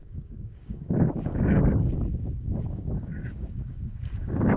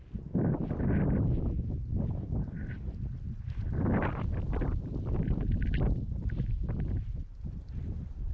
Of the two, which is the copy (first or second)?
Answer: first